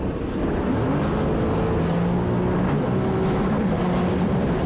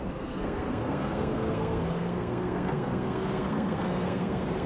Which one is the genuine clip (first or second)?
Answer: first